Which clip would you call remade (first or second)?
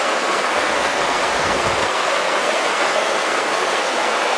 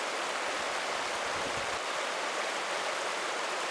first